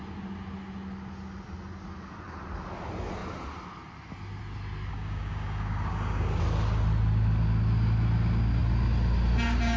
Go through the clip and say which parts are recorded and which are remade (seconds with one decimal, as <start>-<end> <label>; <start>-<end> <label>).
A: 0.0-4.9 recorded; 4.9-6.4 remade; 6.4-9.8 recorded